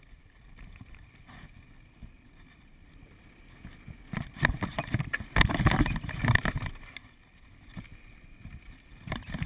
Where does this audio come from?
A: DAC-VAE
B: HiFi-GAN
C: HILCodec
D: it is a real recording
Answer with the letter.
D